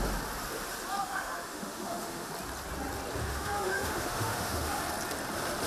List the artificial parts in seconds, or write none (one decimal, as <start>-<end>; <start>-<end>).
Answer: 1.0-2.3; 3.2-4.8